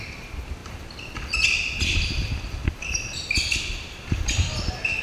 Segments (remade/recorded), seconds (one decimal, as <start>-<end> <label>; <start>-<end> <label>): 0.0-5.0 recorded